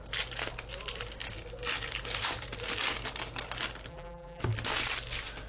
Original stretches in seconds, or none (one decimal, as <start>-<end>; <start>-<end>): 0.0-3.9; 4.4-5.5